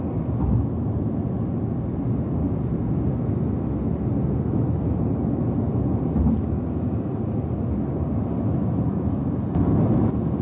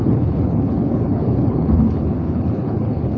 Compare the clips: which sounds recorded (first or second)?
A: first